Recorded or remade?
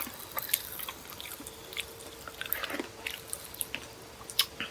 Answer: recorded